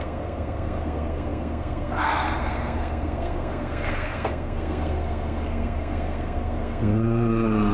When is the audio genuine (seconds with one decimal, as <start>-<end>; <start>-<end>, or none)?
none